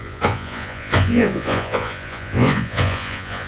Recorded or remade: remade